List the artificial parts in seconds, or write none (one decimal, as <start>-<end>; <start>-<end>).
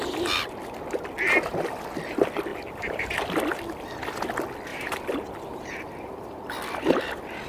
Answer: 2.5-3.1; 4.7-5.7